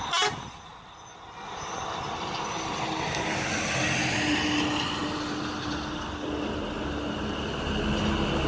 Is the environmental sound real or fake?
real